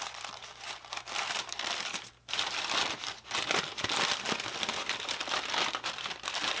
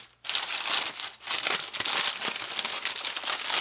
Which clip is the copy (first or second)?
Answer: first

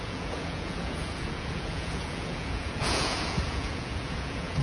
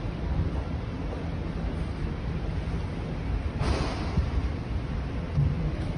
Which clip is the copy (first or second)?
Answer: first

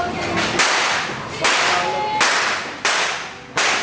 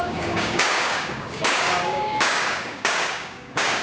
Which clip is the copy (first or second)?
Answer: second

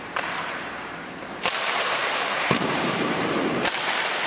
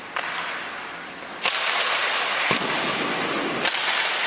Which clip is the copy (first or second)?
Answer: first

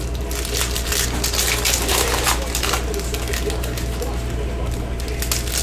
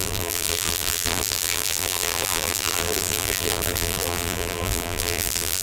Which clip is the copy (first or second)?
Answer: second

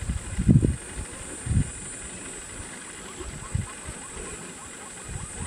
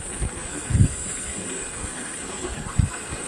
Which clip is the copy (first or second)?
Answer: second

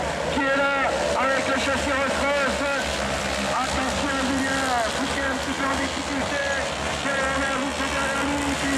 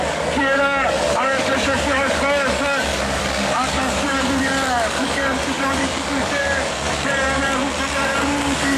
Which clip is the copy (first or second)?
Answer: second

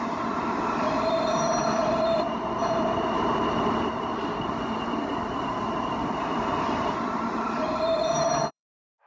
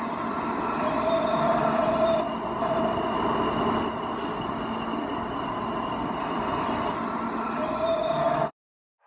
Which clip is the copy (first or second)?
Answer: first